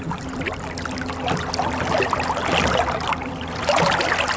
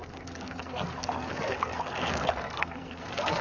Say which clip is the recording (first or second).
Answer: first